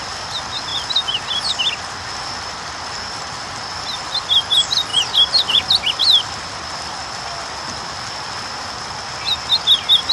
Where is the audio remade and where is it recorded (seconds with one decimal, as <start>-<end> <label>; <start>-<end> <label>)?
0.0-4.9 recorded; 4.9-5.6 remade; 5.6-10.1 recorded